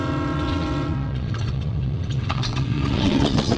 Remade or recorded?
remade